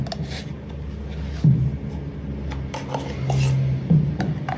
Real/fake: real